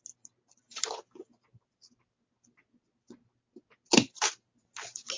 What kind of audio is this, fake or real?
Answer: real